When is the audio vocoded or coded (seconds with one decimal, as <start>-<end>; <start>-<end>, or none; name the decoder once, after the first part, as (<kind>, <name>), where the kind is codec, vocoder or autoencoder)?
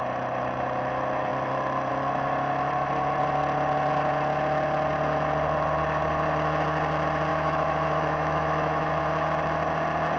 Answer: 7.3-9.0 (autoencoder, DAC-VAE)